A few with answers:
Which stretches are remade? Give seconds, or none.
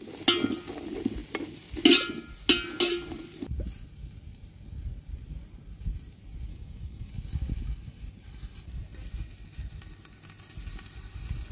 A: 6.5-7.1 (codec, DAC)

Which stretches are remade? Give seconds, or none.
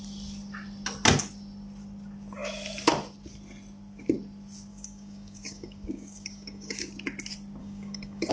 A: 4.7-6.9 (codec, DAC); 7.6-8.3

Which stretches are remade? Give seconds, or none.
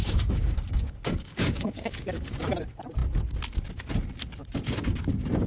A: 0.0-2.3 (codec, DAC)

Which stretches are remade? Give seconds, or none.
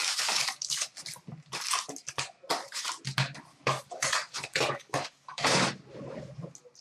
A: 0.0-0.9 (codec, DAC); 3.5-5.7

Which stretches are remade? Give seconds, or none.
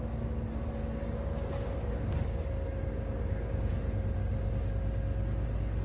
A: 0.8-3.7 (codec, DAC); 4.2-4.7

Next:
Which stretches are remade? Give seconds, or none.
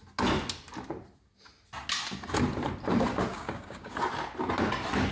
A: 3.3-4.0 (codec, DAC)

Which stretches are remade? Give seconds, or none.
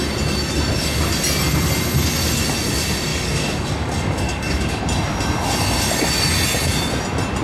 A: 3.1-4.8 (codec, DAC)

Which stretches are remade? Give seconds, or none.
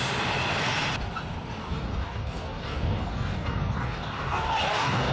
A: 1.6-5.1 (codec, DAC)